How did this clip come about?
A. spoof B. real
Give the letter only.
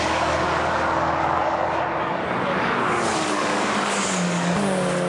A